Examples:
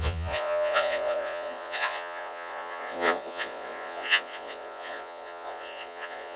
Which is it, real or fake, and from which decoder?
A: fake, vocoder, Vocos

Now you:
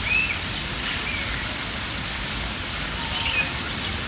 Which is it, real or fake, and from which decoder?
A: real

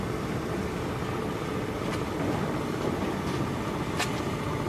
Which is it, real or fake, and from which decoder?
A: real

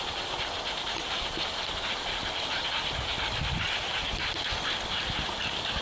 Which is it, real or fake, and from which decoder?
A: real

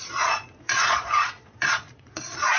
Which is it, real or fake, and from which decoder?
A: fake, vocoder, Vocos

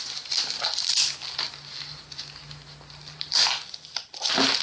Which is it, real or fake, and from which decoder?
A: real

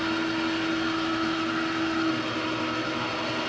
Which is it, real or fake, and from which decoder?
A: real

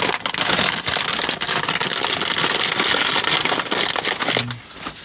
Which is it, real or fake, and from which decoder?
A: real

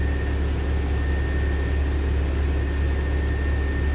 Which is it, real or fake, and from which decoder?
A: real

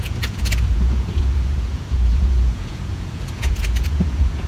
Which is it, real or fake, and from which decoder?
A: fake, vocoder, Vocos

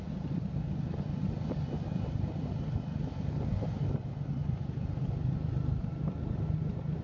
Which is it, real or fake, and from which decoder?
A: real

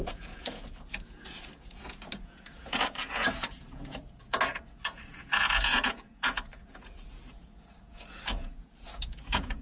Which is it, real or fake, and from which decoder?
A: fake, vocoder, Vocos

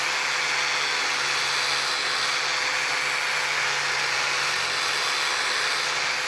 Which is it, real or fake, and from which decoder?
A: real